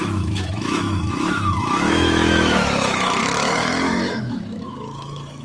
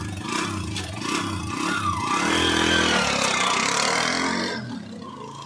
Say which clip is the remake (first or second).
first